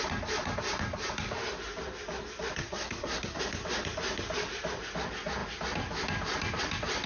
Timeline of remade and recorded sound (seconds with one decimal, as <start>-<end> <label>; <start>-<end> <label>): 0.0-2.6 recorded; 2.6-3.4 remade; 3.4-7.1 recorded